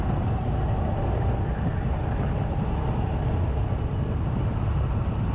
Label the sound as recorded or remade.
recorded